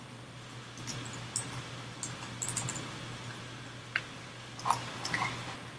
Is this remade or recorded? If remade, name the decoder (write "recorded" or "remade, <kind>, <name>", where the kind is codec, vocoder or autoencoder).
recorded